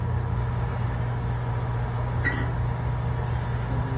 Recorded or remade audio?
recorded